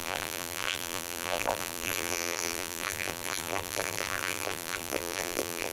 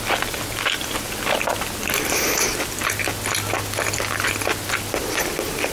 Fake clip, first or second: first